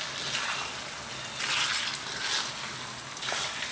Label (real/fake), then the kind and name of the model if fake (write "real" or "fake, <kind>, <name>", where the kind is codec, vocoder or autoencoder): real